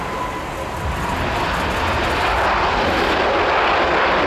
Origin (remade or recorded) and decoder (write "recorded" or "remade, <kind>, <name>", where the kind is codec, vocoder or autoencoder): recorded